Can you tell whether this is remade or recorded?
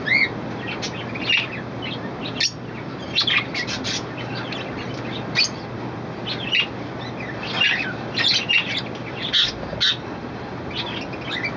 recorded